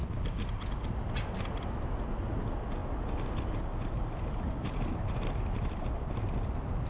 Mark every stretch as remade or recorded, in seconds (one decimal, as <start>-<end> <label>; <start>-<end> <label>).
0.0-6.9 recorded